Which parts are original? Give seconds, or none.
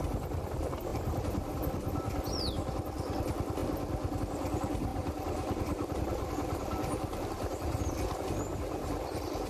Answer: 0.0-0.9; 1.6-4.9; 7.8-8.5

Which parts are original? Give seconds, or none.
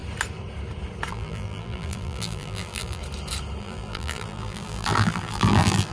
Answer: 0.0-1.1; 3.0-3.6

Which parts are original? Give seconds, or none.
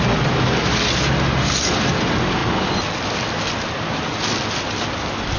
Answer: 0.0-5.4